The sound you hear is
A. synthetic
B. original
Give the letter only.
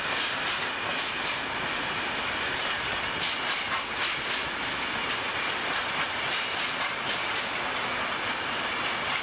B